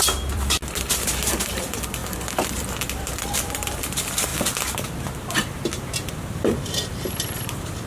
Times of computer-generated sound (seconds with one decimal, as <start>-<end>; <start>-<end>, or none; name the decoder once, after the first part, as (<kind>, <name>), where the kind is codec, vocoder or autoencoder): 0.0-0.6 (vocoder, BigVGAN v2); 1.5-4.3; 6.1-7.9

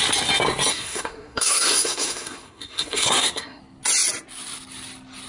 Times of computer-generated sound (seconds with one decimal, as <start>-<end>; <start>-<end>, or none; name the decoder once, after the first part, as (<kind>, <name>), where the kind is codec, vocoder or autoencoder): 0.7-3.6 (codec, SNAC)

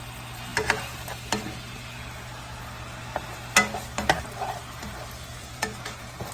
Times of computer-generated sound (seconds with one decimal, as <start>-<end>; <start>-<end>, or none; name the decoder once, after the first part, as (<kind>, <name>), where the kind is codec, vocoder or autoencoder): 5.3-6.3 (vocoder, Vocos)

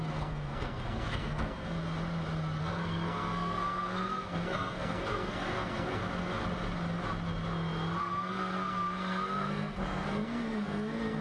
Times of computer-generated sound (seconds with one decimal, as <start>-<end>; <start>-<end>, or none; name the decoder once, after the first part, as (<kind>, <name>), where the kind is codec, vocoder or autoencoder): 0.0-1.8 (codec, SNAC); 2.6-6.0; 8.0-11.2

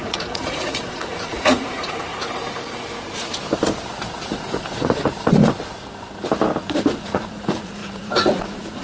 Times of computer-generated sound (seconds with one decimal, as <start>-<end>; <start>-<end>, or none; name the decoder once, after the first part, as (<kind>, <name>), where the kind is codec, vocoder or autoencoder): 0.0-2.1 (vocoder, Vocos); 4.4-5.4; 6.9-8.8

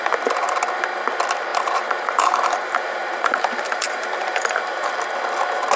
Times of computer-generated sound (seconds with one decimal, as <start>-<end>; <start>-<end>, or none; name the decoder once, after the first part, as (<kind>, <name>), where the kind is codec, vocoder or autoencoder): 1.5-4.9 (vocoder, BigVGAN v2)